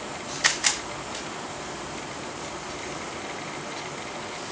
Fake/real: real